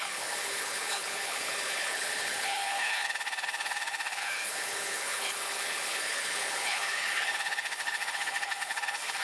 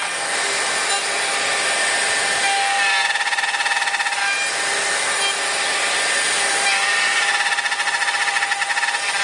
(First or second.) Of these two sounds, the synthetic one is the first